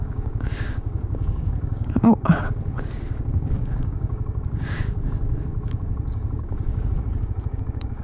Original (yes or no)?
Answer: no